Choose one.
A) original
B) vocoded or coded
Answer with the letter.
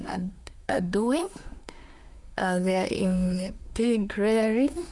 B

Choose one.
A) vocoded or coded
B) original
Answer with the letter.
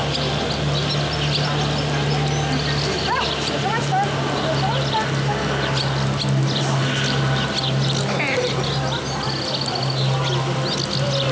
B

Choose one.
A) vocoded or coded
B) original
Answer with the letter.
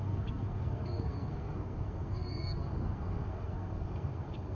A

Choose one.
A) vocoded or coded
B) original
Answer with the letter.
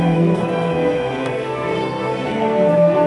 A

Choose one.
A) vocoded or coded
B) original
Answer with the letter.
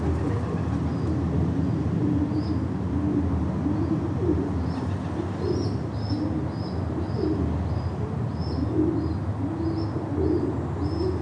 B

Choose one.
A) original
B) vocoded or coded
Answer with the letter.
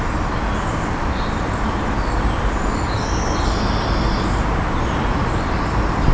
A